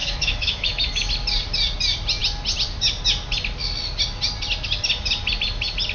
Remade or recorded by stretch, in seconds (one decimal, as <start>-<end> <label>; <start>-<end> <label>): 0.0-1.1 remade; 1.1-5.9 recorded